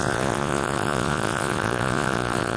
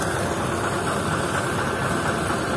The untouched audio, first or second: second